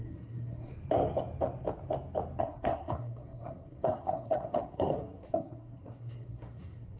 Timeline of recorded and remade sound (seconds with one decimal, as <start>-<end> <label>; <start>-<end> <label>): 0.0-0.7 remade; 0.7-2.4 recorded; 2.4-7.0 remade